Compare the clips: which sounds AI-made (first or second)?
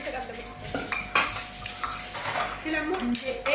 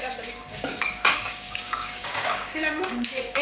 second